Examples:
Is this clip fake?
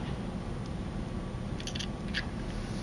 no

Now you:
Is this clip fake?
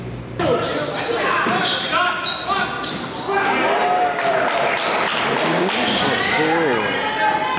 no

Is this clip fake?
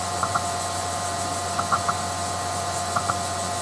yes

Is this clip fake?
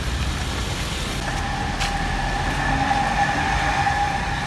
no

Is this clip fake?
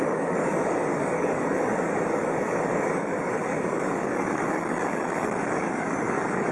yes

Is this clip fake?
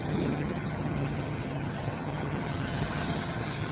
yes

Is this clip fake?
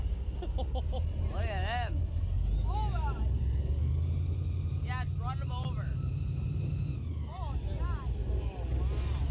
no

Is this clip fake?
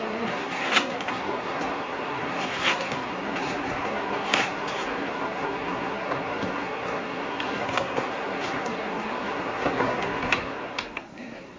yes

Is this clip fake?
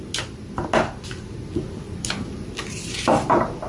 no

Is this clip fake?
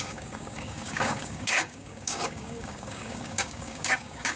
yes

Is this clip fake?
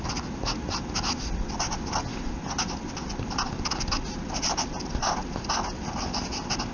no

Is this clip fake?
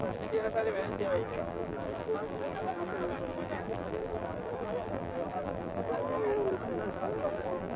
yes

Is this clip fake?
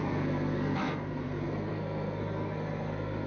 yes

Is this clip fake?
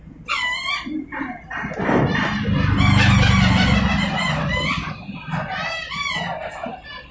no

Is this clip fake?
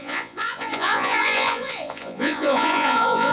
yes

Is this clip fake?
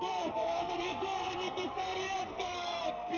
yes